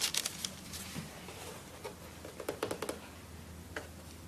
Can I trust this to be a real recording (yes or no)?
yes